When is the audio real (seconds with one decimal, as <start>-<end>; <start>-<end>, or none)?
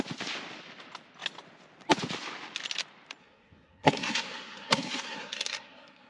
0.0-3.2